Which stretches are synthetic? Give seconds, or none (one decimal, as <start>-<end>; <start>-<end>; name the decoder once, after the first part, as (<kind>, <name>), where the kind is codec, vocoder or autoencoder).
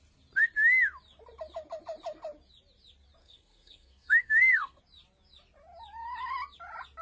3.2-4.8 (codec, SNAC)